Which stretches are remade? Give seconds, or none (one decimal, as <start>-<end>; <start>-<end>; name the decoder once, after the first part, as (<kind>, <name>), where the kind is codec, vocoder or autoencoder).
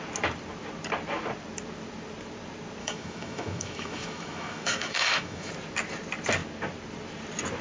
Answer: 2.8-5.5 (autoencoder, DAC-VAE)